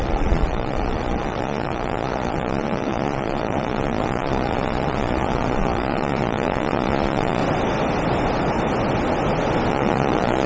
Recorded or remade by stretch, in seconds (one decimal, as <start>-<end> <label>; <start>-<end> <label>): 0.0-7.4 remade; 7.4-9.7 recorded; 9.7-10.5 remade

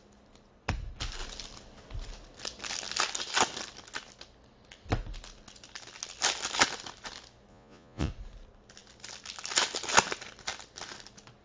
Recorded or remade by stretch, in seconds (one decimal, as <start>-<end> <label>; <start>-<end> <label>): 0.0-7.5 recorded; 7.5-8.1 remade; 8.1-11.4 recorded

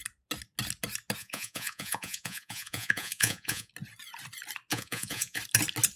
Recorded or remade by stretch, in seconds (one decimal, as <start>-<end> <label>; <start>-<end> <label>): 0.0-1.2 recorded; 1.2-3.7 remade; 3.7-4.7 recorded; 4.7-5.4 remade; 5.4-6.0 recorded

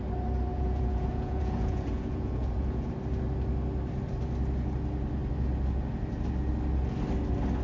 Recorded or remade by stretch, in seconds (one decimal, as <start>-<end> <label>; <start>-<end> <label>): 0.0-0.5 recorded; 0.5-2.9 remade; 2.9-7.6 recorded

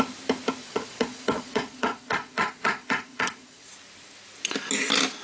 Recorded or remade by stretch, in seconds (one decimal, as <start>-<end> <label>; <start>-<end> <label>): 0.0-0.6 recorded; 0.6-3.7 remade; 3.7-5.2 recorded